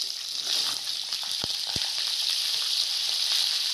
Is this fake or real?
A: real